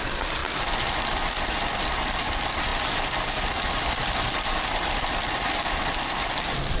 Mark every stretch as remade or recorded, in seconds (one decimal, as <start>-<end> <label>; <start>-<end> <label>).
0.0-6.8 recorded